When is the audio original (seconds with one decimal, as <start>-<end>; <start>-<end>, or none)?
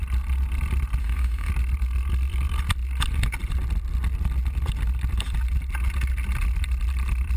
0.0-1.0; 1.5-7.4